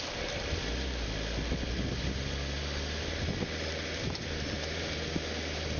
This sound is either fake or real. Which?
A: real